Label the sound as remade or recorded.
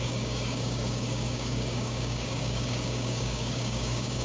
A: remade